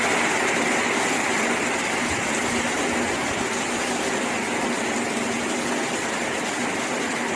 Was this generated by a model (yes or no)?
no